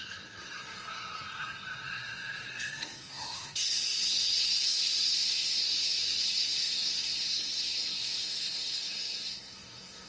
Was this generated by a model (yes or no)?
yes